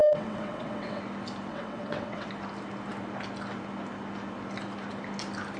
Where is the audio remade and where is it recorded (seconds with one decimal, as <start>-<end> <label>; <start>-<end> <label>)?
0.0-1.0 remade; 1.0-1.5 recorded; 1.5-2.3 remade; 2.3-5.6 recorded